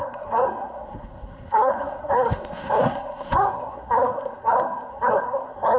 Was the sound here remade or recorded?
remade